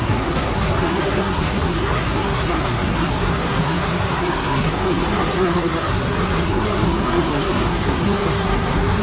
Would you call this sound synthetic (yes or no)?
yes